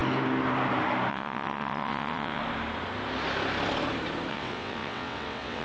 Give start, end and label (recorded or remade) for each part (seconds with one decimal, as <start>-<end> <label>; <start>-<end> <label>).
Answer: 0.0-1.1 recorded; 1.1-2.4 remade; 2.4-4.3 recorded; 4.3-5.6 remade